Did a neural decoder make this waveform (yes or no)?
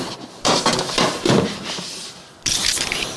no